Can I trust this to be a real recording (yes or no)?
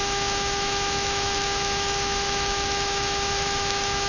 no